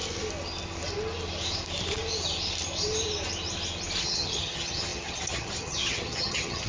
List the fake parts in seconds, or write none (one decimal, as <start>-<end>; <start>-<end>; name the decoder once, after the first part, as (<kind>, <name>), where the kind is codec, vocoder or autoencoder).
4.0-6.7 (vocoder, HiFi-GAN)